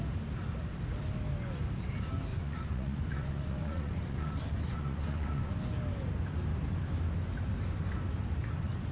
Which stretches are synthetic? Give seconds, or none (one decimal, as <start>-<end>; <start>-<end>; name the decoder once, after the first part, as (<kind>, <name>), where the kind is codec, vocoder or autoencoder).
2.3-5.5 (vocoder, Vocos)